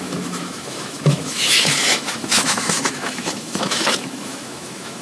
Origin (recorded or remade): remade